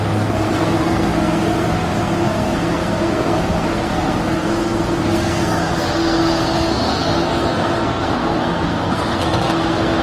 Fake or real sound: fake